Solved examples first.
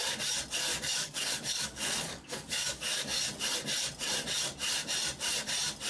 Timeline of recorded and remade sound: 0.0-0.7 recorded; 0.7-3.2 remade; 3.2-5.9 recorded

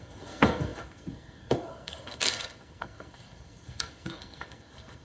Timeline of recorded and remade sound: 0.0-5.0 remade

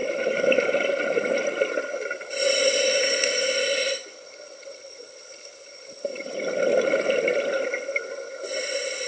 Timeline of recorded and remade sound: 0.0-9.1 recorded

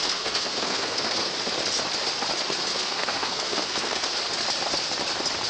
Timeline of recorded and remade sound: 0.0-1.3 remade; 1.3-2.7 recorded; 2.7-4.2 remade; 4.2-5.5 recorded

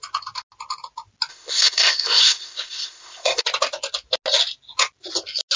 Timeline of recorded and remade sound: 0.0-1.3 recorded; 1.3-3.4 remade; 3.4-5.6 recorded

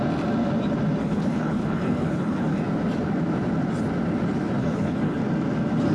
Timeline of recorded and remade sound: 0.0-1.0 recorded; 1.0-2.6 remade; 2.6-4.6 recorded; 4.6-5.2 remade; 5.2-5.9 recorded

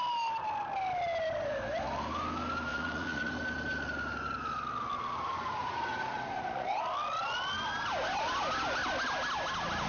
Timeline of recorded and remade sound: 0.0-2.7 recorded; 2.7-3.3 remade; 3.3-5.6 recorded; 5.6-6.8 remade; 6.8-9.9 recorded

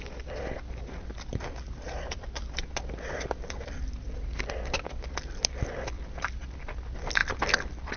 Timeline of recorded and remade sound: 0.0-8.0 recorded